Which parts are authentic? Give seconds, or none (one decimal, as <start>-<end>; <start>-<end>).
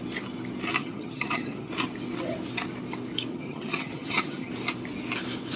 0.0-0.8; 1.7-3.3; 4.5-5.6